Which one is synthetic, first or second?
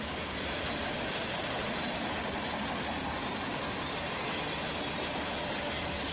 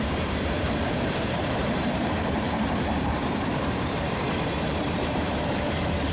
second